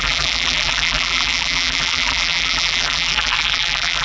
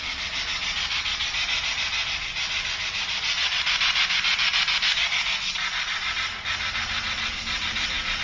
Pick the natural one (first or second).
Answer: second